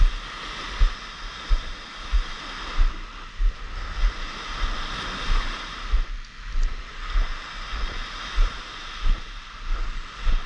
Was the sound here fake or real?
real